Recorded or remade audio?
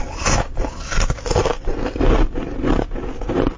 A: recorded